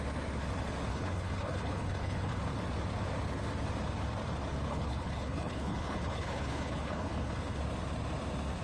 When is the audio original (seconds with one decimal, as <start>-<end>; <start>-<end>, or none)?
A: 0.0-0.9; 2.4-4.7; 7.6-8.6